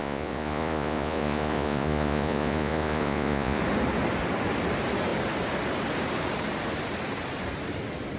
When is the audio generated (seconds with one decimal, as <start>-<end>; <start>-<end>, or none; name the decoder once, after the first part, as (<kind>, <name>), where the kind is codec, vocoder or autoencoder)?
0.0-3.6 (vocoder, Vocos)